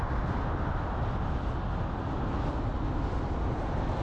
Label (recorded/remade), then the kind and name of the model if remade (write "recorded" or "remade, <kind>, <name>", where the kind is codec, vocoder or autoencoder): recorded